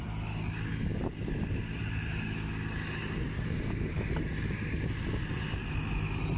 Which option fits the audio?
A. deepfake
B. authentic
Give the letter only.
B